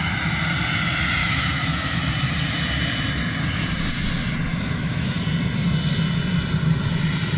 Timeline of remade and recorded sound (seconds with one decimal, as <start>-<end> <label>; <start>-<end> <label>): 0.0-1.2 recorded; 1.2-2.0 remade; 2.0-4.5 recorded; 4.5-5.2 remade; 5.2-7.4 recorded